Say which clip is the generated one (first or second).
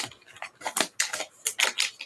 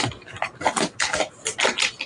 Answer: second